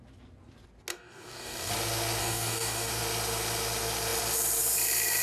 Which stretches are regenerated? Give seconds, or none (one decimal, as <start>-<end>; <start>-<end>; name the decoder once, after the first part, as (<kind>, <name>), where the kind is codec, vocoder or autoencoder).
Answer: 0.9-1.7 (codec, DAC); 2.2-2.9